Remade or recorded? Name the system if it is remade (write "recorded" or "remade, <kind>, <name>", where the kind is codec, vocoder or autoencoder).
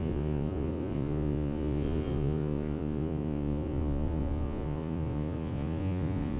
remade, vocoder, Vocos